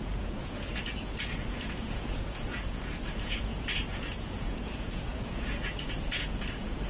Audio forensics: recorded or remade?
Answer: remade